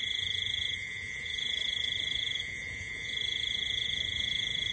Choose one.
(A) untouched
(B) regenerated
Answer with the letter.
B